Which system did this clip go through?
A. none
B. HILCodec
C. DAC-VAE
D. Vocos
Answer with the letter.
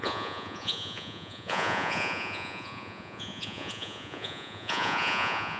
D